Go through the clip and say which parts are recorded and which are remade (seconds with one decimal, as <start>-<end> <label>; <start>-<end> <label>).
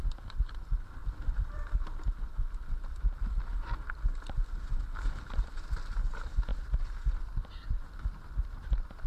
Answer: 0.0-9.1 recorded